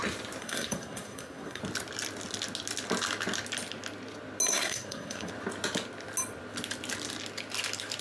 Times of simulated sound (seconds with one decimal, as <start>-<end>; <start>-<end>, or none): 0.4-1.6; 4.5-5.3